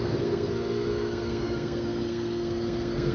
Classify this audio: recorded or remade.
remade